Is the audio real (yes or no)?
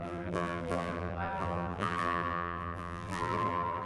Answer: no